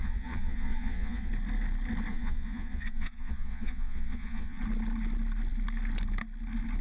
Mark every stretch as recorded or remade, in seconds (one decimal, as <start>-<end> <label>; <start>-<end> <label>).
0.0-1.3 remade; 1.3-2.1 recorded; 2.1-4.6 remade; 4.6-6.8 recorded

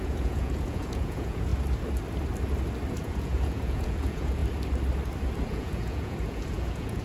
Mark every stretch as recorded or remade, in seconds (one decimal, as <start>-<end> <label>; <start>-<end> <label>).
0.0-1.5 remade; 1.5-2.9 recorded; 2.9-4.4 remade; 4.4-5.5 recorded; 5.5-7.0 remade

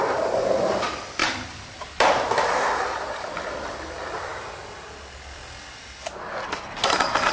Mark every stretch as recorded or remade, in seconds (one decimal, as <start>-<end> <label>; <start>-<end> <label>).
0.0-7.3 recorded

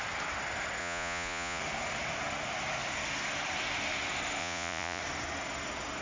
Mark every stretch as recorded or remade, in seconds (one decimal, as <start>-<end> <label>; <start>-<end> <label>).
0.0-0.8 recorded; 0.8-1.6 remade; 1.6-4.4 recorded; 4.4-5.0 remade; 5.0-6.0 recorded

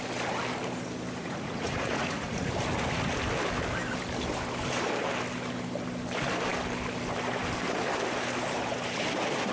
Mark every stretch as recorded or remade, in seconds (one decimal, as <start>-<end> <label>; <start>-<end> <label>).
0.0-1.2 recorded; 1.2-2.5 remade; 2.5-9.5 recorded

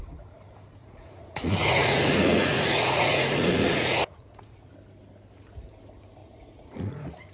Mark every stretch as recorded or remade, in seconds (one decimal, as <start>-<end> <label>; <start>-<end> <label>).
0.0-0.8 recorded; 0.8-4.7 remade; 4.7-6.2 recorded; 6.2-7.3 remade

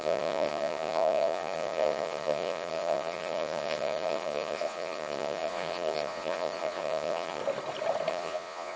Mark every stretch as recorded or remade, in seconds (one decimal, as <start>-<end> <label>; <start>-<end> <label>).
0.0-7.4 remade; 7.4-8.1 recorded; 8.1-8.8 remade

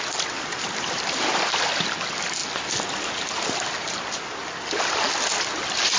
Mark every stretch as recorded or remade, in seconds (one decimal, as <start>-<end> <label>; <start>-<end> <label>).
0.0-6.0 recorded